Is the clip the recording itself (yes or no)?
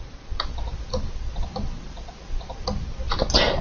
yes